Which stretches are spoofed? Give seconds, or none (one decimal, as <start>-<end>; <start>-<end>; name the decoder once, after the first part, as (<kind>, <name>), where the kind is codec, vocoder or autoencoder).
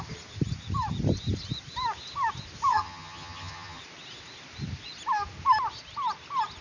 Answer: 2.7-3.8 (vocoder, HiFi-GAN)